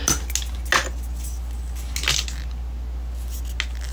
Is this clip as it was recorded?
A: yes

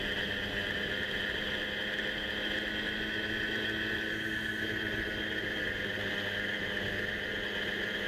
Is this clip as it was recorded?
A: yes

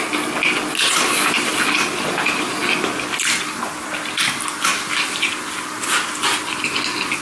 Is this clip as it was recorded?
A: yes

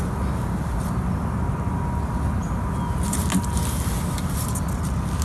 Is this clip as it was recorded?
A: yes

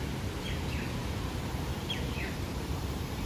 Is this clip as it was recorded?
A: no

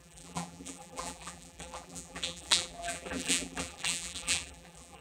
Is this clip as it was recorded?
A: no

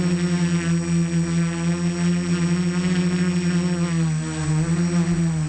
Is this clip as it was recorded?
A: yes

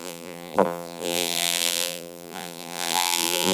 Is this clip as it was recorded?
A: no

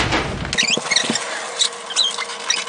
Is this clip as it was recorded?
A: yes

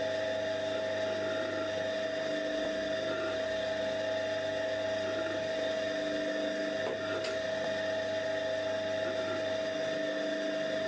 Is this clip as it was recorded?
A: yes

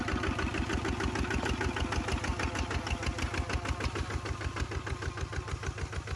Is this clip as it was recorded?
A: yes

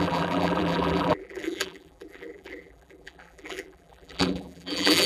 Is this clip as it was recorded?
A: no